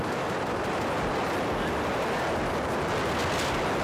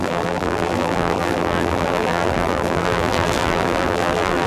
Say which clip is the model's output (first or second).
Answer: second